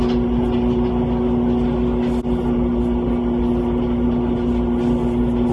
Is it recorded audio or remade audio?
recorded